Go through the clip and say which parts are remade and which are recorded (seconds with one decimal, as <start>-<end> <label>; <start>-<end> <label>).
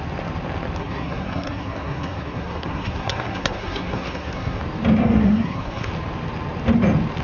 0.0-0.8 recorded; 0.8-4.6 remade; 4.6-5.0 recorded; 5.0-5.9 remade; 5.9-7.2 recorded